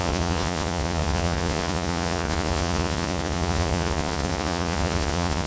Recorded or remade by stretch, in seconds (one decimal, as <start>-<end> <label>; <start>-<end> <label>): 0.0-5.5 remade